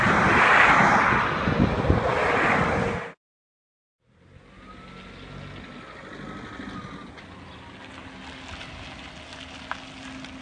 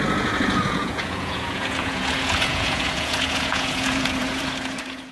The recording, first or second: first